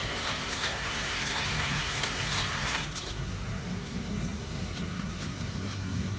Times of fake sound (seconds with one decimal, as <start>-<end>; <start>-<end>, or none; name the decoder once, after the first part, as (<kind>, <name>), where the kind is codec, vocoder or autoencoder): 0.0-6.2 (codec, SNAC)